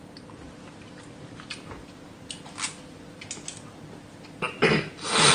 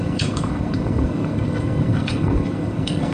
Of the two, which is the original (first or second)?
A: first